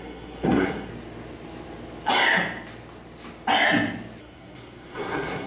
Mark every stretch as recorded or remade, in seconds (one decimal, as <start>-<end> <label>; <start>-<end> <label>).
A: 0.0-0.9 remade; 0.9-4.2 recorded; 4.2-5.5 remade